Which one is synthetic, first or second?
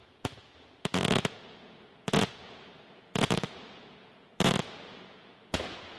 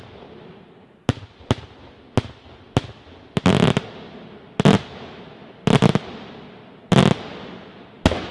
first